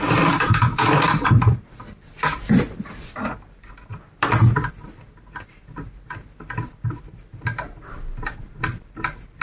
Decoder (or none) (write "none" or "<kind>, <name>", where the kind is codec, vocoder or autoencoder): vocoder, BigVGAN v2